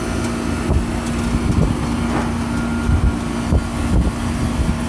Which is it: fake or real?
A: real